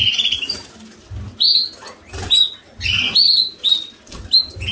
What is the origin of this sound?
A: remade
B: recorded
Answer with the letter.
B